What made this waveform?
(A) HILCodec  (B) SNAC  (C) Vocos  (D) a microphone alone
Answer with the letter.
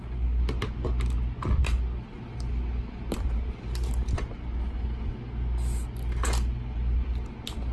D